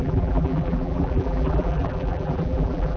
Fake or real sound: fake